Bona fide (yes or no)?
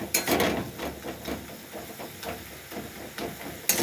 yes